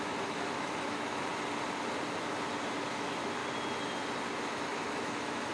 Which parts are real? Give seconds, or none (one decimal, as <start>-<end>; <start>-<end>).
1.3-2.9; 3.4-4.4